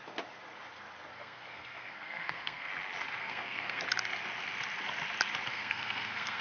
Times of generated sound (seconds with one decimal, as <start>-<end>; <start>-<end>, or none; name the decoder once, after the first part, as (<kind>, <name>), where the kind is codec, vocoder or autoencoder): 1.1-2.7 (codec, SNAC); 3.2-3.8; 5.5-6.4